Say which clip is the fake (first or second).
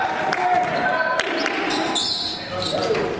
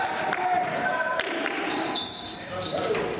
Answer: second